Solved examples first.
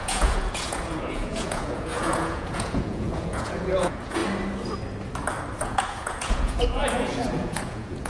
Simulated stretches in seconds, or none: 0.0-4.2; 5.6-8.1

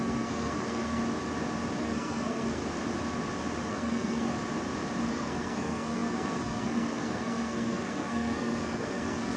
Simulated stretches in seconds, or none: 0.0-1.0; 1.8-2.6; 3.7-4.3; 5.1-9.4